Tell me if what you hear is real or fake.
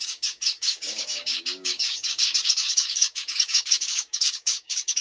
fake